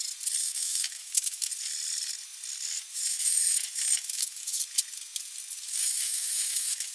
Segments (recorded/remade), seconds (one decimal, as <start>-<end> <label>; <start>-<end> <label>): 0.0-0.4 recorded; 0.4-1.5 remade; 1.5-2.9 recorded; 2.9-4.6 remade; 4.6-5.7 recorded; 5.7-6.9 remade